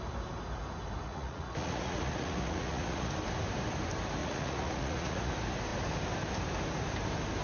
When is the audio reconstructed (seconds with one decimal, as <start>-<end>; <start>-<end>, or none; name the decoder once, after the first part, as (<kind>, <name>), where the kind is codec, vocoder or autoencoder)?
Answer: 1.0-3.1 (vocoder, Vocos); 4.2-5.3